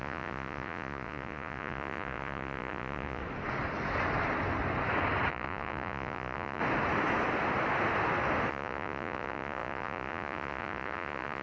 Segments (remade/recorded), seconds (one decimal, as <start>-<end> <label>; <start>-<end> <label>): 0.0-3.2 remade; 3.2-5.3 recorded; 5.3-6.6 remade; 6.6-8.5 recorded; 8.5-11.4 remade

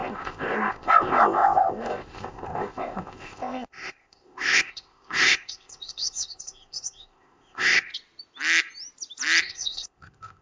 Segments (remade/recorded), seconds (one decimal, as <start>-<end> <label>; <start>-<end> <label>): 0.0-7.9 remade; 7.9-9.4 recorded; 9.4-10.4 remade